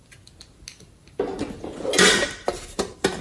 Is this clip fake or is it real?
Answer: real